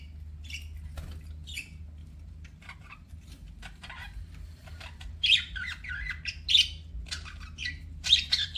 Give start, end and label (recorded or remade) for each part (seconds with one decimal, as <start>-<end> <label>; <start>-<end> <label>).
0.0-2.0 recorded; 2.0-5.9 remade; 5.9-7.6 recorded; 7.6-8.6 remade